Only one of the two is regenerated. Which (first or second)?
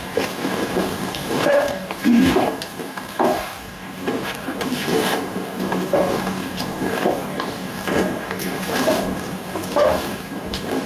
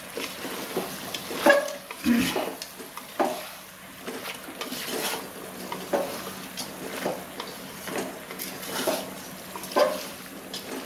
first